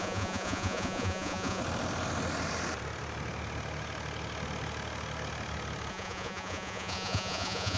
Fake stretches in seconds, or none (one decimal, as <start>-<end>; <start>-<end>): 0.0-1.6; 5.9-7.8